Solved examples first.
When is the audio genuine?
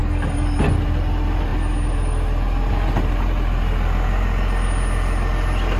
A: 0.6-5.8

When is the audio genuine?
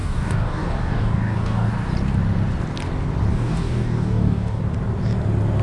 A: 1.7-3.3; 4.6-5.6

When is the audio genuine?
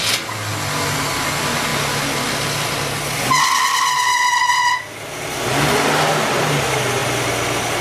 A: 0.0-7.8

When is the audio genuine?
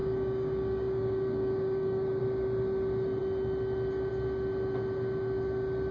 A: 2.2-5.9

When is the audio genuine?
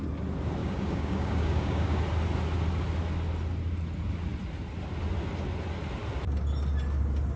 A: 0.0-0.6; 2.0-7.4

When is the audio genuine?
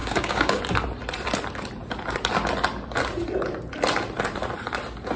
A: 0.6-5.2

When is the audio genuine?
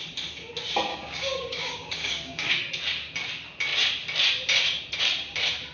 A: 0.0-0.9; 2.5-5.7